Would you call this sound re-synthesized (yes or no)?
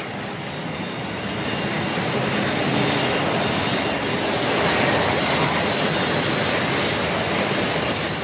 no